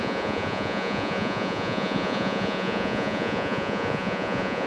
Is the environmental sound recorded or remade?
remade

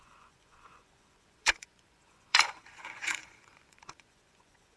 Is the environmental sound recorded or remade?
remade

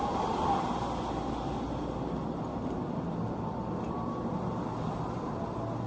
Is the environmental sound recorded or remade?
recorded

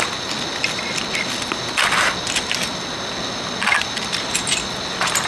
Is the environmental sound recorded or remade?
recorded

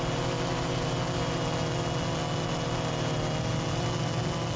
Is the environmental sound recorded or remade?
recorded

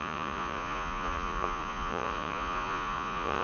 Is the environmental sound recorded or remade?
remade